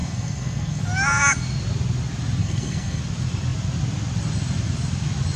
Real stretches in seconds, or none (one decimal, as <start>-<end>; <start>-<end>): 0.8-2.4; 3.0-5.4